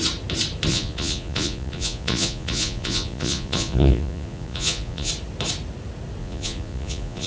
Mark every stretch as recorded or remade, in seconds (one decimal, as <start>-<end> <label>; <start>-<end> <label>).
0.0-0.7 recorded; 0.7-5.1 remade; 5.1-6.2 recorded; 6.2-7.3 remade